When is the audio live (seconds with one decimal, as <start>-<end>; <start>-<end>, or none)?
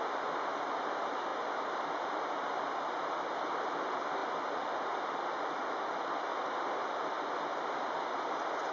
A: 0.0-8.7